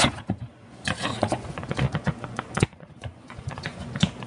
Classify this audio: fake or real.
fake